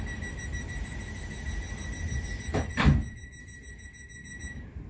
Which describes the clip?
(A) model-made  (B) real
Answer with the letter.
A